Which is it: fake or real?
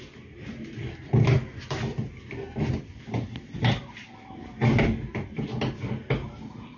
real